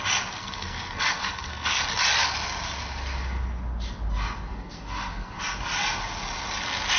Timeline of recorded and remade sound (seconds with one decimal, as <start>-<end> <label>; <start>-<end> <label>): 0.0-0.4 recorded; 0.4-1.8 remade; 1.8-4.5 recorded; 4.5-5.4 remade; 5.4-7.0 recorded